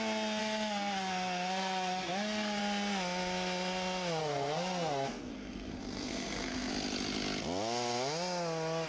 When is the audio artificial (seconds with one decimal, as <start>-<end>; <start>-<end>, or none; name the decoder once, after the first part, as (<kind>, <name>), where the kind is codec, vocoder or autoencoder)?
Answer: 0.4-2.6 (codec, SNAC); 4.2-6.7